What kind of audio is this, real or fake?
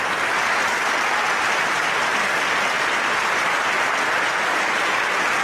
real